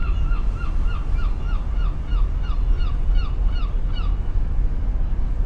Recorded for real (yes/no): yes